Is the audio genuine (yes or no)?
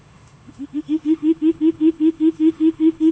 no